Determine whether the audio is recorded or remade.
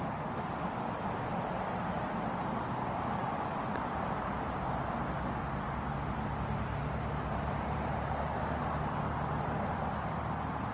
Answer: recorded